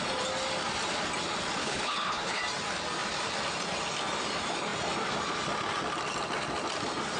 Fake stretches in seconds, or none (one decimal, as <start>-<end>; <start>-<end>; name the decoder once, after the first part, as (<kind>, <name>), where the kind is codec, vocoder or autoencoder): 1.6-2.4 (codec, HILCodec)